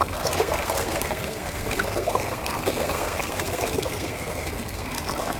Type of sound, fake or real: fake